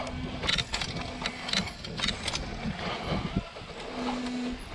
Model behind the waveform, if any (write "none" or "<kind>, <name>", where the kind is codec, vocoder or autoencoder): none